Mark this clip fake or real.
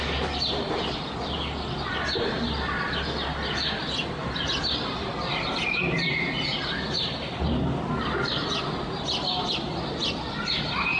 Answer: real